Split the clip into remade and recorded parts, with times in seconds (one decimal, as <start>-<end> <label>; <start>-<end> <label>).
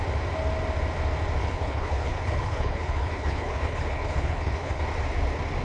0.0-1.4 recorded; 1.4-4.8 remade; 4.8-5.6 recorded